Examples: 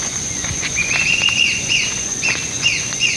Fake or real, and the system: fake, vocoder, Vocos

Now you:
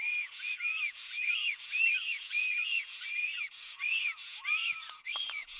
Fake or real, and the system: fake, vocoder, Vocos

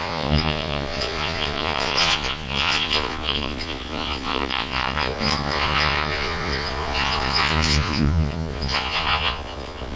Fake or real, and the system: fake, vocoder, Vocos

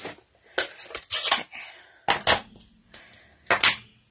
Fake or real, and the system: real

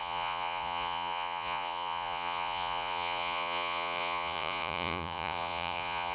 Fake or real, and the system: fake, vocoder, Vocos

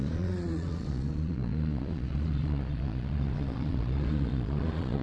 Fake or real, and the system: fake, vocoder, Vocos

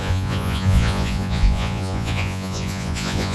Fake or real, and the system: fake, vocoder, Vocos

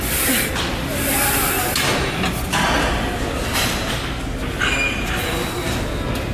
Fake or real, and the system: real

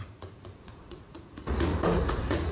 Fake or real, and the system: fake, vocoder, Vocos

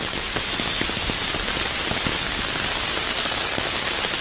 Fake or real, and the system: real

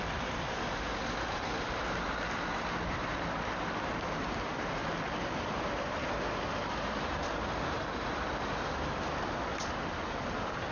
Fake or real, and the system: real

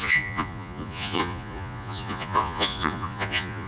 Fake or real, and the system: fake, vocoder, Vocos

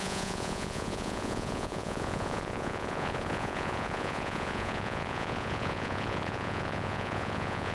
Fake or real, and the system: fake, vocoder, Vocos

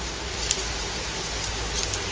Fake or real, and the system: real